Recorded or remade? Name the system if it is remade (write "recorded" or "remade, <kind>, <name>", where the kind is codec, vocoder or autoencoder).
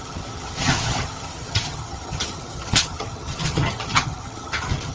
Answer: remade, vocoder, HiFi-GAN